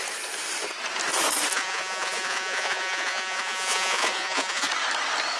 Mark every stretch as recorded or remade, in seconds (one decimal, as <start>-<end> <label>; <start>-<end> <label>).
0.0-1.5 recorded; 1.5-4.7 remade; 4.7-5.4 recorded